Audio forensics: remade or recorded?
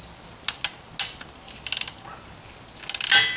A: recorded